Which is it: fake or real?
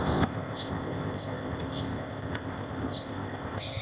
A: fake